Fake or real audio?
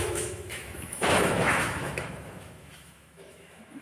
fake